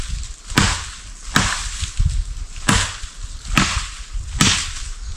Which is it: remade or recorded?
recorded